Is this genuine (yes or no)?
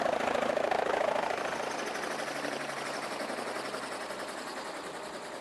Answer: yes